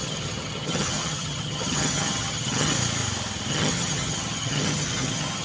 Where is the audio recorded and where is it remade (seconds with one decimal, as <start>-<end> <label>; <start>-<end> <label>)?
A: 0.0-2.7 remade; 2.7-3.5 recorded; 3.5-5.4 remade